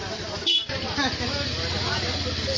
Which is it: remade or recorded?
recorded